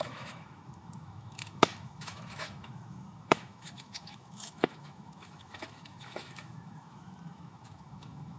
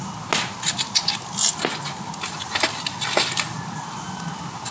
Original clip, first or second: second